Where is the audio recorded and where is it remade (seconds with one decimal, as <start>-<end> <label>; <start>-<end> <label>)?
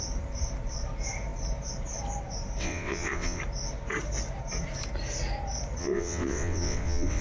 0.0-2.6 recorded; 2.6-3.4 remade; 3.4-5.8 recorded; 5.8-7.2 remade